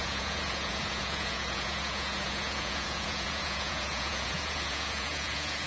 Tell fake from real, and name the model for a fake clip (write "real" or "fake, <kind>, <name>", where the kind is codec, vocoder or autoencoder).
fake, vocoder, Vocos